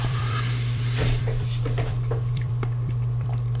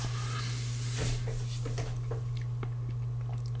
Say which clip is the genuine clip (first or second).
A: second